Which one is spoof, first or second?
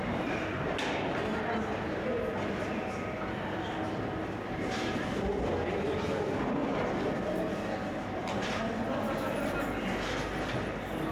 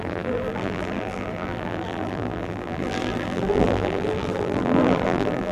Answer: second